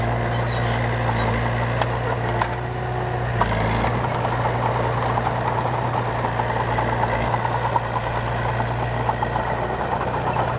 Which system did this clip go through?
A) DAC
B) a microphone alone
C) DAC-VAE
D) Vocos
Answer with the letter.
B